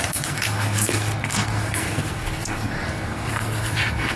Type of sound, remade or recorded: remade